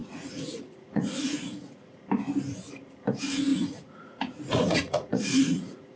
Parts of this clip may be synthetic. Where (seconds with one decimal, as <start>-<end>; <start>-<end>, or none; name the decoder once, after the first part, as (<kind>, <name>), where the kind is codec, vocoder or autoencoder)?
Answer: 0.0-2.0 (vocoder, Vocos); 3.5-6.0